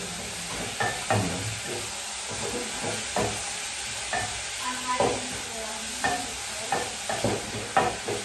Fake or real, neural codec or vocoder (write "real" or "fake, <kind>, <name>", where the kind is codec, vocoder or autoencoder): real